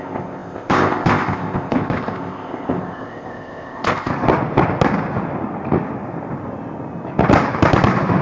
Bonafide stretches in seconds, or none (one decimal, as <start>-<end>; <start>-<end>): 4.1-8.2